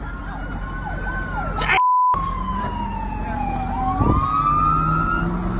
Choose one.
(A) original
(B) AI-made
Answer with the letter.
A